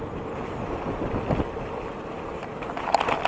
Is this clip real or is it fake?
real